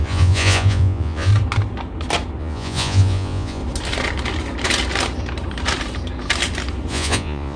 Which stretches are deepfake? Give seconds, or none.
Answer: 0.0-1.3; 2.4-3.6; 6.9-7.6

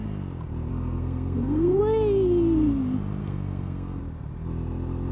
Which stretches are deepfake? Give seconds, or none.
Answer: 0.7-1.8; 3.2-4.0

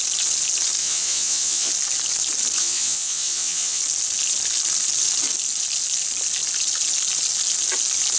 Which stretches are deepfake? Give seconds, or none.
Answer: 0.8-1.7; 2.6-3.8

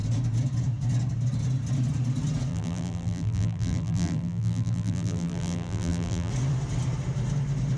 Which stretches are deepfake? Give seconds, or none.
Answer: 2.5-6.3

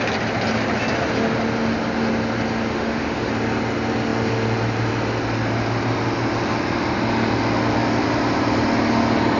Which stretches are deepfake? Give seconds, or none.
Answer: 2.7-3.3

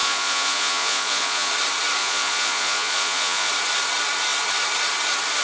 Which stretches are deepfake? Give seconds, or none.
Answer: 0.0-1.5; 2.0-3.5

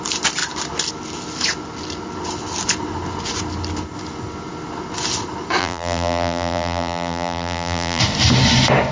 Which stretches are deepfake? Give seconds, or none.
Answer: 5.6-8.0